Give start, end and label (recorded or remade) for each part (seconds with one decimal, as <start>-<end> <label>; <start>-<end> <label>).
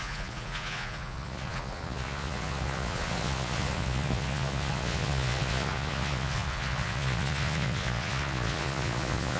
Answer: 0.0-9.4 remade